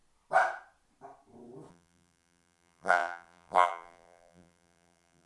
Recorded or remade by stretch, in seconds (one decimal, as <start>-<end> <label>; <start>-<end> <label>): 0.0-1.7 recorded; 1.7-5.3 remade